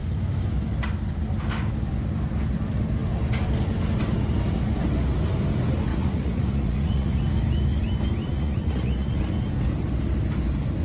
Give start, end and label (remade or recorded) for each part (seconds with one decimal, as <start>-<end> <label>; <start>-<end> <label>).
0.0-5.9 recorded; 5.9-7.2 remade; 7.2-8.3 recorded; 8.3-9.2 remade; 9.2-10.8 recorded